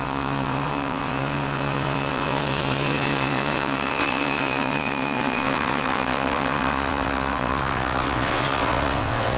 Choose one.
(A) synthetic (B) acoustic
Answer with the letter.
A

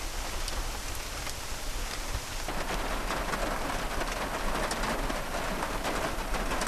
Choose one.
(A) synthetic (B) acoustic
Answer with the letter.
B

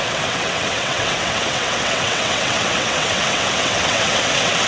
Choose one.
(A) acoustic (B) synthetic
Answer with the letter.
B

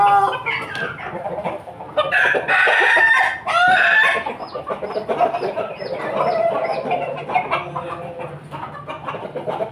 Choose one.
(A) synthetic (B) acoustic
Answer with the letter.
B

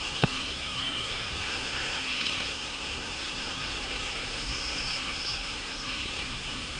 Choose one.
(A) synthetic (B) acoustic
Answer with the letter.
A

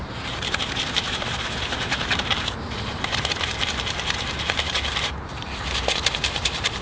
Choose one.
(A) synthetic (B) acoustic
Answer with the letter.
A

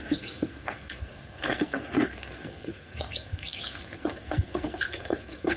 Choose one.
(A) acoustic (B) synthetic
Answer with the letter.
B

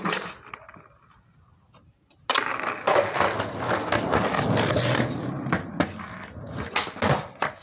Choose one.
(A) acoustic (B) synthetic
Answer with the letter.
A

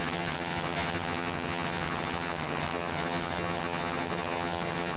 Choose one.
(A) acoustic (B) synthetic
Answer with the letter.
B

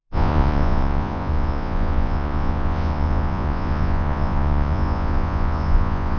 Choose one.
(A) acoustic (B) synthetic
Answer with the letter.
B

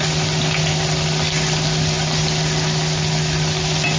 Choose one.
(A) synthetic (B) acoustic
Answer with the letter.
B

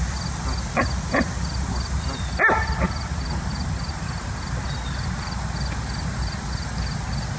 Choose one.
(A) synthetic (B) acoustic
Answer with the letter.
B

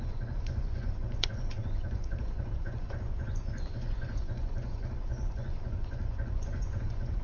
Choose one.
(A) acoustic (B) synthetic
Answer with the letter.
B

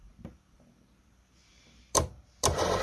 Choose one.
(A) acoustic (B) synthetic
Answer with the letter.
B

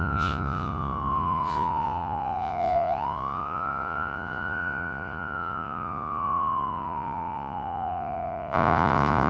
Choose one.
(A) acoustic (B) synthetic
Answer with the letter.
B